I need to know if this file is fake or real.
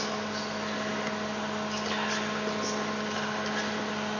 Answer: real